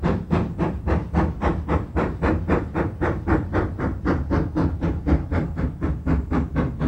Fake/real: real